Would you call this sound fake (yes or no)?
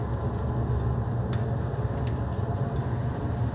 no